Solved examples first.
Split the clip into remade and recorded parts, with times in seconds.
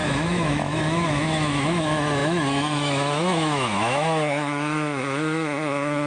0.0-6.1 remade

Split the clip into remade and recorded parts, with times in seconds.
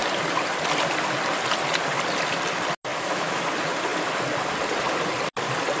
0.0-2.9 recorded; 2.9-3.4 remade; 3.4-5.8 recorded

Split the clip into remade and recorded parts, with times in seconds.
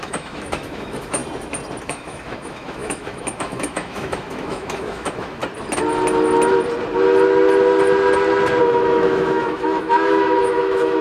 0.0-1.2 remade; 1.2-1.8 recorded; 1.8-5.4 remade; 5.4-8.6 recorded; 8.6-11.0 remade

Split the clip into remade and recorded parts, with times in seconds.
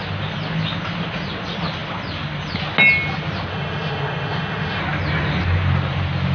0.0-3.5 recorded; 3.5-4.8 remade; 4.8-6.3 recorded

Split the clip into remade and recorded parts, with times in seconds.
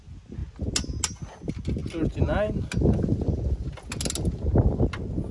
0.0-5.3 recorded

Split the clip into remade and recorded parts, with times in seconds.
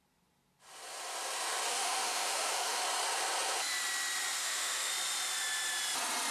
0.0-1.7 recorded; 1.7-2.8 remade; 2.8-4.4 recorded; 4.4-4.9 remade; 4.9-6.3 recorded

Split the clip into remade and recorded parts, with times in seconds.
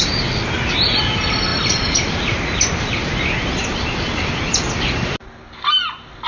0.0-6.3 recorded